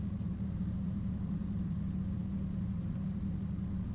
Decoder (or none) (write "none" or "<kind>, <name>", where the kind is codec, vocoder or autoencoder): vocoder, BigVGAN v2